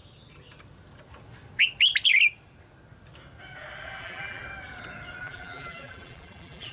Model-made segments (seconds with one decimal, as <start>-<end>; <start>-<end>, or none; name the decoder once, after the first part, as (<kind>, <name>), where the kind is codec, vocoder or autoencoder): 4.0-4.4 (vocoder, BigVGAN v2); 5.2-6.7